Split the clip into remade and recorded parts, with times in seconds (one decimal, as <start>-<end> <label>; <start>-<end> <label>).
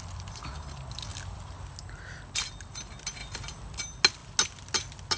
0.0-5.2 recorded